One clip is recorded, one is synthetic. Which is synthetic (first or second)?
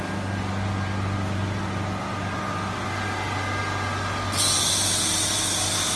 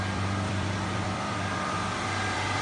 second